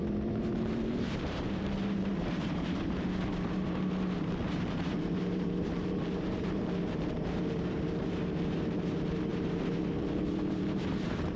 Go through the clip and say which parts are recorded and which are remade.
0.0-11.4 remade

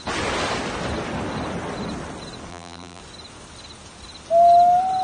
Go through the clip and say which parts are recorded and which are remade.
0.0-2.5 recorded; 2.5-3.0 remade; 3.0-5.0 recorded

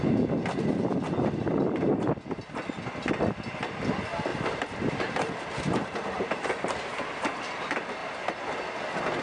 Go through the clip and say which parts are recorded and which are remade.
0.0-4.3 recorded; 4.3-7.4 remade; 7.4-9.2 recorded

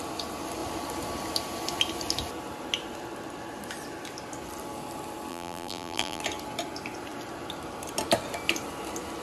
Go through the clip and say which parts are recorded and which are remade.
0.0-5.3 recorded; 5.3-6.2 remade; 6.2-9.2 recorded

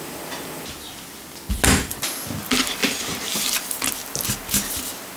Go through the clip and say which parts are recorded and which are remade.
0.0-5.2 recorded

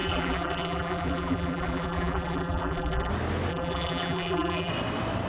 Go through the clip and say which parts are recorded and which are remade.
0.0-3.1 remade; 3.1-3.5 recorded; 3.5-4.7 remade; 4.7-5.3 recorded

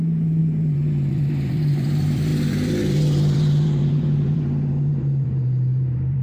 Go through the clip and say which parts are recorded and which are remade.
0.0-6.2 remade

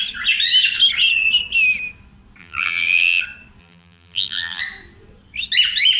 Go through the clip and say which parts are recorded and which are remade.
0.0-2.4 recorded; 2.4-3.2 remade; 3.2-3.6 recorded; 3.6-4.6 remade; 4.6-6.0 recorded